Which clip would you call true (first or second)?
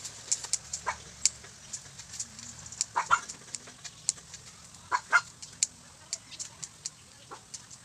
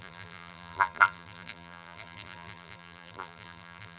first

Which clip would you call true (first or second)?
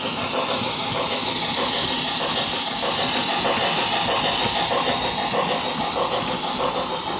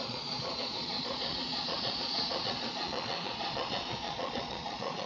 first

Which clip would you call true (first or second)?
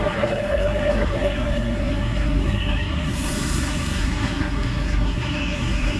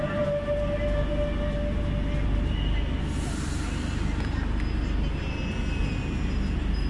second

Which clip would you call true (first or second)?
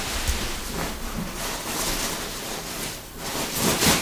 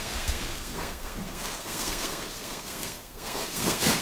first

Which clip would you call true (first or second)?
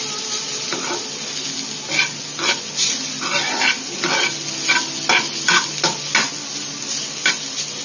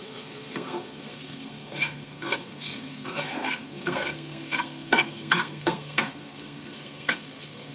first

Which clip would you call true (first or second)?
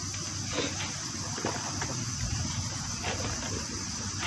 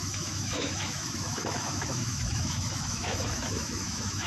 first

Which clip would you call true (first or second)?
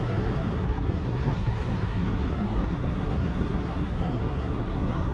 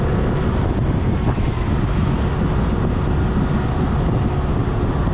second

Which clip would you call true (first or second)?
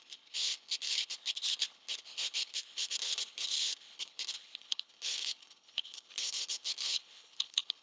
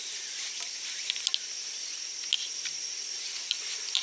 second